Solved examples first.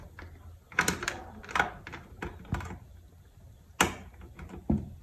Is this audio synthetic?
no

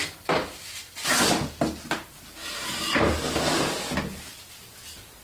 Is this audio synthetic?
yes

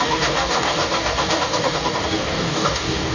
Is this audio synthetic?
yes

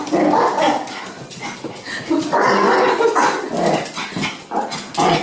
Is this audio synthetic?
no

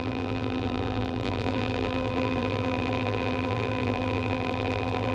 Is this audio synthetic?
yes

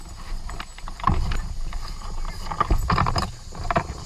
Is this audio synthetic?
no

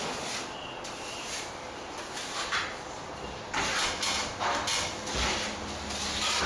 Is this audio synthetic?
no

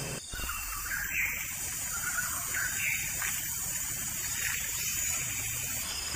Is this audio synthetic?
no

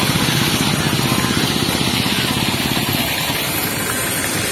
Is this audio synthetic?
no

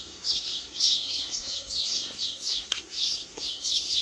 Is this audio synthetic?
yes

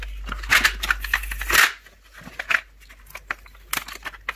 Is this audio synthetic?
no